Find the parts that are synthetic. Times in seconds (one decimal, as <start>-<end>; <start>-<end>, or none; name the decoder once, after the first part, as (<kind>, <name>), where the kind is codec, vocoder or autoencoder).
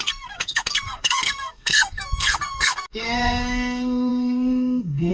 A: 0.0-5.1 (codec, SNAC)